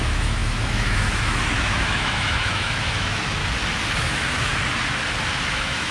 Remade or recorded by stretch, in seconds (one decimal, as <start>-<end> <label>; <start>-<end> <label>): 0.0-3.4 remade; 3.4-4.0 recorded; 4.0-4.5 remade; 4.5-5.5 recorded; 5.5-5.9 remade